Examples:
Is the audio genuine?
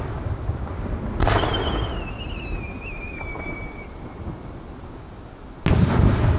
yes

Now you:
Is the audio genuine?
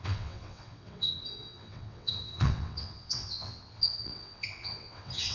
no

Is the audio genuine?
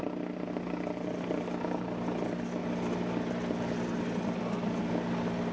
yes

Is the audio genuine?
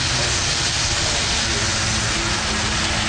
yes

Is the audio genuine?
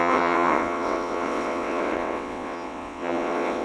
no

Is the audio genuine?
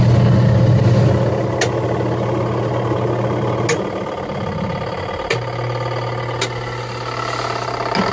yes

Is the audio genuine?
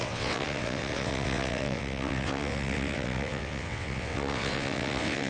no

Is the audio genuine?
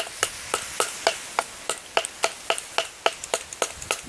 yes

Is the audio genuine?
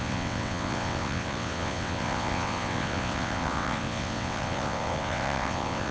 no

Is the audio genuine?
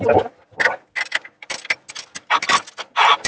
yes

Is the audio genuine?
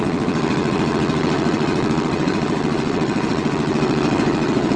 no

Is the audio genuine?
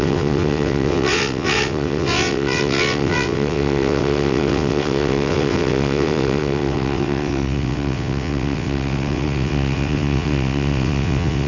no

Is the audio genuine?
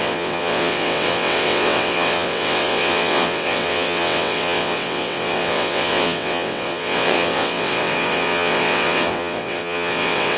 no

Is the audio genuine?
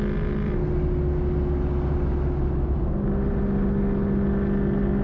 yes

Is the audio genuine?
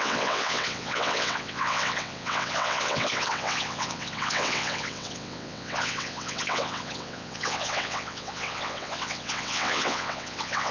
no